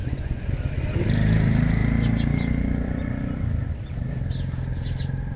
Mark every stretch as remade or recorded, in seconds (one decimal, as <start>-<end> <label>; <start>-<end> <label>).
0.0-0.5 remade; 0.5-5.4 recorded